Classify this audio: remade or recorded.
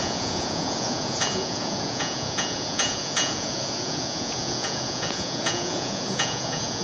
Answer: remade